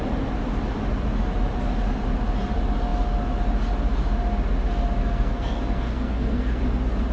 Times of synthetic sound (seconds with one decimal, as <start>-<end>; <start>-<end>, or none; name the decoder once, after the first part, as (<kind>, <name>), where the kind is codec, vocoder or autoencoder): 5.0-6.6 (codec, SNAC)